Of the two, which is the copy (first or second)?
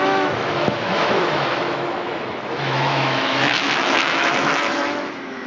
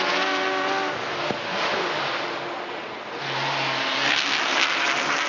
first